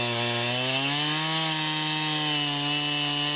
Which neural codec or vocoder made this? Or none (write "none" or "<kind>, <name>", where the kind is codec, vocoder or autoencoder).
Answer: none